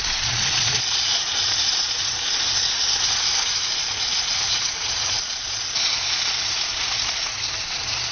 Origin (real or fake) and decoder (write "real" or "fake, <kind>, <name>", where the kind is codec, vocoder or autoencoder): fake, vocoder, Vocos